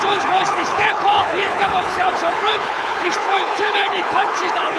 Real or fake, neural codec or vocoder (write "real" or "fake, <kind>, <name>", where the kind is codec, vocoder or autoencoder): fake, codec, HILCodec